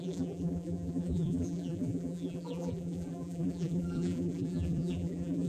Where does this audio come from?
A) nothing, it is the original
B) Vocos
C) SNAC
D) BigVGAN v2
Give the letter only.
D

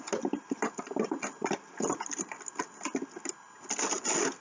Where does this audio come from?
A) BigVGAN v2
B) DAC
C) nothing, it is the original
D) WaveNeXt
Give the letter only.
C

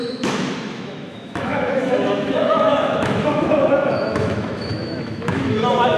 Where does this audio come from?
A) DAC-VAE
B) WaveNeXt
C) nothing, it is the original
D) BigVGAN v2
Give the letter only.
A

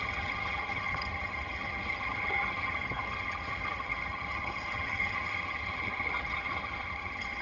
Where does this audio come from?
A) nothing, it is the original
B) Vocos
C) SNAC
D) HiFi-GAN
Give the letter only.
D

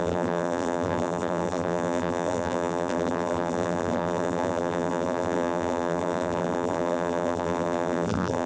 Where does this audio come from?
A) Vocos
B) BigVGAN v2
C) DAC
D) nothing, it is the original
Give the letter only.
B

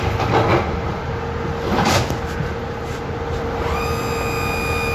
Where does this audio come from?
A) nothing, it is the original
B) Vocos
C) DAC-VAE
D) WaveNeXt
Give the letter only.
A